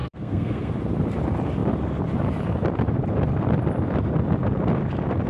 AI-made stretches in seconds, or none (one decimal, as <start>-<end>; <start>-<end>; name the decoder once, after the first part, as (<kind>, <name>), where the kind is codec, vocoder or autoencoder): 0.0-0.7 (codec, SNAC)